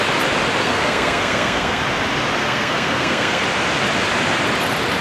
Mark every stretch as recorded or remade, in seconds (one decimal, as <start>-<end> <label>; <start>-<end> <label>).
0.0-0.6 recorded; 0.6-1.8 remade; 1.8-2.4 recorded; 2.4-3.4 remade; 3.4-5.0 recorded